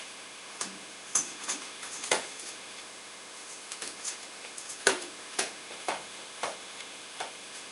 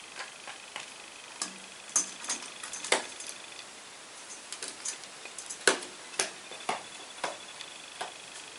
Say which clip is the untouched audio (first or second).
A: second